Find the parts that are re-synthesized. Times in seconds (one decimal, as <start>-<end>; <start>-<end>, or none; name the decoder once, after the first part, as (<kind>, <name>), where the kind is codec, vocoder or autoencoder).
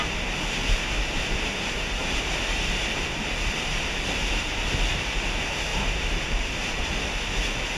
0.6-4.0 (vocoder, BigVGAN v2); 5.7-7.1